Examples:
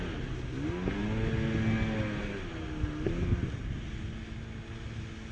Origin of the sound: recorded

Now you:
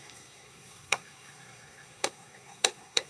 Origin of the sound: remade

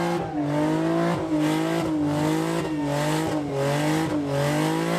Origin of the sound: recorded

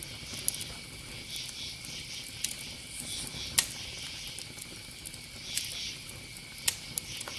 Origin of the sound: recorded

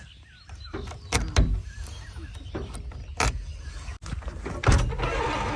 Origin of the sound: recorded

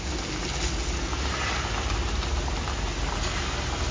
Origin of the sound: recorded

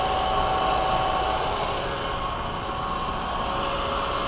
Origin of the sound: recorded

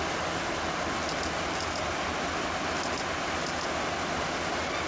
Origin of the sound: recorded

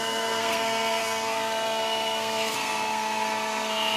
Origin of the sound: remade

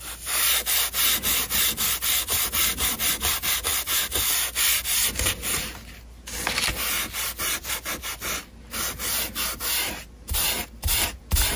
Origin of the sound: recorded